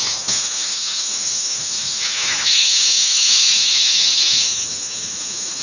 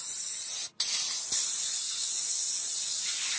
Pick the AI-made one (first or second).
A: first